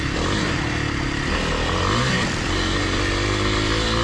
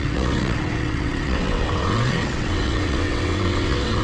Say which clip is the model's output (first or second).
second